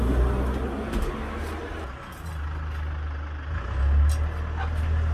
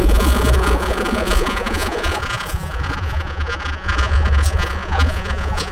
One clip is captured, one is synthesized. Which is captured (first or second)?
first